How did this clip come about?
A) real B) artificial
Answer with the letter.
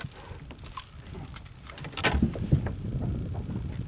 A